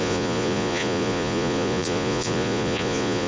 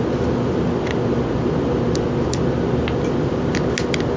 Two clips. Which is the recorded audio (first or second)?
second